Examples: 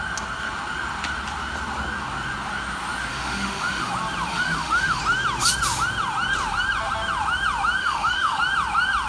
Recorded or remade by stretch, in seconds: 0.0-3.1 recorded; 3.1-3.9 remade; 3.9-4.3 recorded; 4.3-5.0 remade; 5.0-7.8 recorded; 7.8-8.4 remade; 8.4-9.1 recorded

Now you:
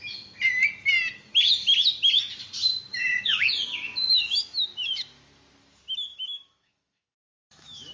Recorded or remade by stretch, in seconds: 0.0-2.9 recorded; 2.9-3.5 remade; 3.5-6.1 recorded; 6.1-7.9 remade

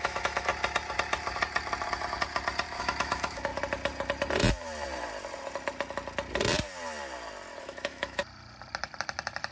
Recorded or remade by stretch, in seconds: 0.0-0.5 remade; 0.5-2.8 recorded; 2.8-3.5 remade; 3.5-7.6 recorded; 7.6-8.2 remade; 8.2-9.5 recorded

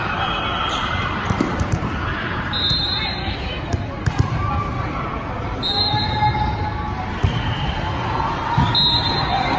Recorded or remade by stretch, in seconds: 0.0-3.2 recorded; 3.2-3.7 remade; 3.7-9.6 recorded